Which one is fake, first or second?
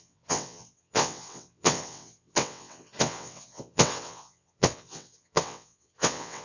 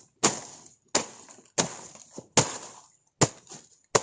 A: first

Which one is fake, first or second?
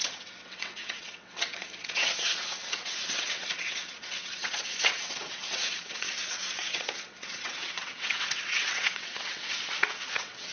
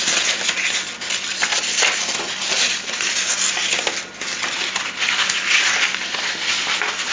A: first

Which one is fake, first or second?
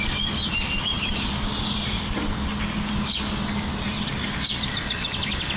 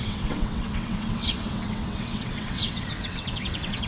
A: second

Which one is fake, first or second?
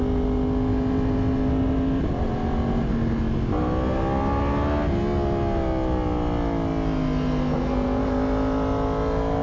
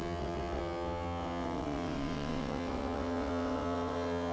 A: second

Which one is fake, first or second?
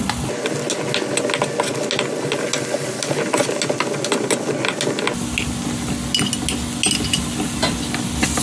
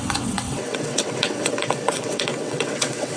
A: second